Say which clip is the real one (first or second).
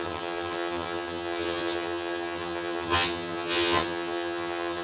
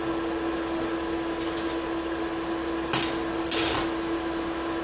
second